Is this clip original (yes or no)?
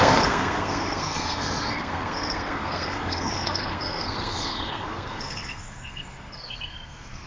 no